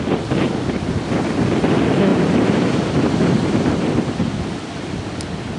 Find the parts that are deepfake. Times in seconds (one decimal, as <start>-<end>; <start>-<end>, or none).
2.1-3.9